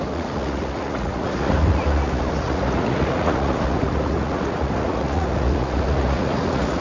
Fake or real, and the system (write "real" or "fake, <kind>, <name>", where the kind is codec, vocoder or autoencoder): fake, vocoder, Vocos